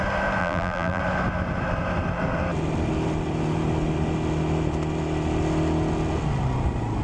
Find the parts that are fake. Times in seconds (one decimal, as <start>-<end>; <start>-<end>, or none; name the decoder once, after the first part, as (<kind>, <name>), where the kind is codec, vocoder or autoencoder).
0.4-1.0 (vocoder, BigVGAN v2)